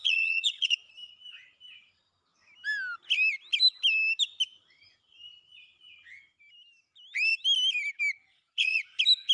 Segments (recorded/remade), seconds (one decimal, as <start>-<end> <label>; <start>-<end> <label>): 0.0-0.9 remade; 0.9-8.3 recorded; 8.3-8.8 remade; 8.8-9.3 recorded